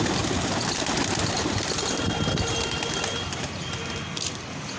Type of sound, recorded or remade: recorded